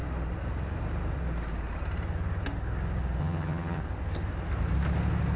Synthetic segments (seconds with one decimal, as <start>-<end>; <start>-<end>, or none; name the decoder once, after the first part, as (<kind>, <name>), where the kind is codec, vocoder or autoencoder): 3.2-3.8 (vocoder, HiFi-GAN)

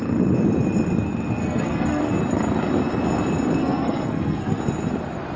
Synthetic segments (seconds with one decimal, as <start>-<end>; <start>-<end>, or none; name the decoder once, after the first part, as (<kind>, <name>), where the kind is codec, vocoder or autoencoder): 1.4-2.0 (codec, SNAC); 3.6-4.6

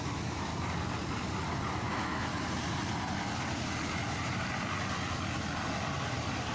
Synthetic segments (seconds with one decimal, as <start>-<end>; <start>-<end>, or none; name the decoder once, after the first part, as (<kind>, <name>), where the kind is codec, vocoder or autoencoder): 0.0-0.5 (autoencoder, DAC-VAE); 1.9-2.3